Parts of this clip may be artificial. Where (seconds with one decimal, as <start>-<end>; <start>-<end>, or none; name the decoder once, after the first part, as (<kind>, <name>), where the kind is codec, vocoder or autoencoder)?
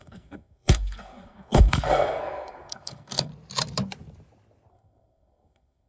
0.0-3.3 (codec, SNAC); 4.7-5.9